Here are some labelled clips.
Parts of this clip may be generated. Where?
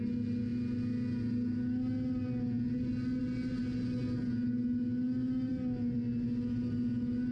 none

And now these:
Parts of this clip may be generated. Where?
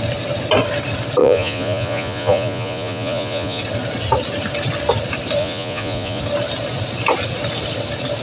1.2-3.6; 5.4-6.2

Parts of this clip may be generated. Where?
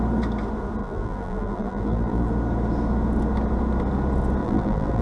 0.8-2.3; 4.4-5.0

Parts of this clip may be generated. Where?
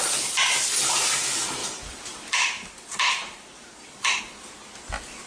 1.6-4.2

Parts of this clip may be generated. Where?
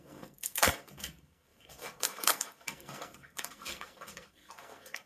0.0-5.1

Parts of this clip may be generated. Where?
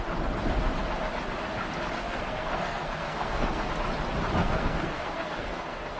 2.0-3.7; 4.4-6.0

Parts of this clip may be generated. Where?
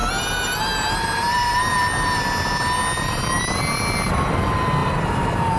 none